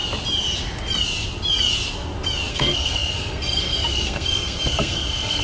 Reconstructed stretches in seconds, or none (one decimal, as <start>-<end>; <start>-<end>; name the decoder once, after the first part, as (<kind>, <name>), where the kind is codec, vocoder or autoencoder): 2.5-5.4 (codec, SNAC)